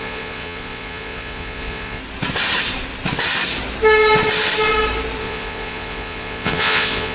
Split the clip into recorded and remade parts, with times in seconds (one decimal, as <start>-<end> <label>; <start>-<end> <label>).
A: 0.0-2.0 remade; 2.0-5.2 recorded; 5.2-7.1 remade